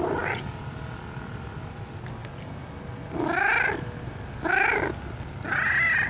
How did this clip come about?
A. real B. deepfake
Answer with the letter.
A